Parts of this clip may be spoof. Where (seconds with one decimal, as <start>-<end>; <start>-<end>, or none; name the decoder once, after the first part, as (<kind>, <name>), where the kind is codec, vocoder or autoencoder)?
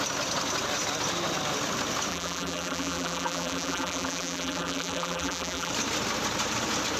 2.1-5.7 (vocoder, BigVGAN v2)